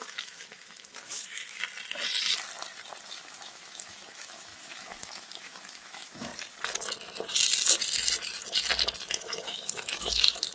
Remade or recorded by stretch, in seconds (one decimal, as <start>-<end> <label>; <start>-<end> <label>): 0.0-1.6 remade; 1.6-3.1 recorded; 3.1-6.3 remade; 6.3-9.1 recorded; 9.1-10.5 remade